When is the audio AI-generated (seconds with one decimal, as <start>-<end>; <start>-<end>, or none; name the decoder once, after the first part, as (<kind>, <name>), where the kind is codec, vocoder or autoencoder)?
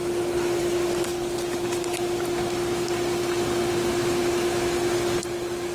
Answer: none